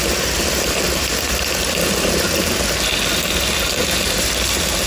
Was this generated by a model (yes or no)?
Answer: no